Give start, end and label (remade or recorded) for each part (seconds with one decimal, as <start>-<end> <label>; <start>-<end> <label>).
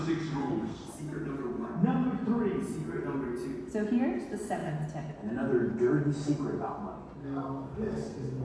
0.0-0.4 recorded; 0.4-0.9 remade; 0.9-7.2 recorded; 7.2-8.4 remade